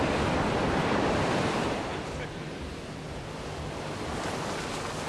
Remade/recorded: recorded